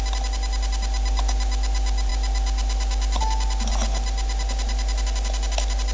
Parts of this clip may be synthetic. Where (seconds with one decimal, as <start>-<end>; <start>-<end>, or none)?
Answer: none